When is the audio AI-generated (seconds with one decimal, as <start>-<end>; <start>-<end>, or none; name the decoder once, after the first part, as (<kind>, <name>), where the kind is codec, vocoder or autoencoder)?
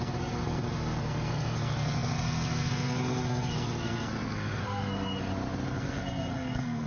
0.0-5.3 (codec, SNAC); 5.8-6.9